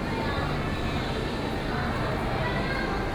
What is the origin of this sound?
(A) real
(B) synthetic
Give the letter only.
A